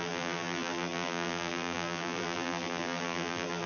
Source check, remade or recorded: remade